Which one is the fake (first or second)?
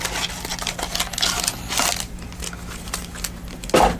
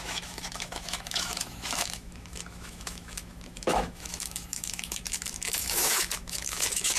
second